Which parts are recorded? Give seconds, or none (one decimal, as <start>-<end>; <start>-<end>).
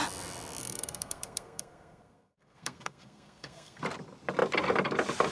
0.0-0.6; 3.8-5.3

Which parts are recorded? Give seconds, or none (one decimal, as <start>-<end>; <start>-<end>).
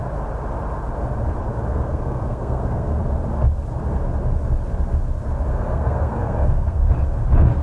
0.0-1.7; 3.0-5.5; 6.9-7.6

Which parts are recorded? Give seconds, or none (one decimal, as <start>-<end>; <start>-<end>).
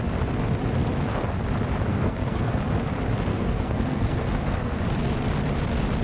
0.0-1.9; 2.6-3.3; 4.8-6.0